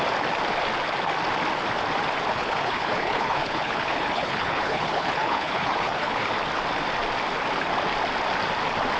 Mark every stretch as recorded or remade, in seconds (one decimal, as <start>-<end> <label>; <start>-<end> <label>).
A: 0.0-2.3 recorded; 2.3-6.3 remade; 6.3-9.0 recorded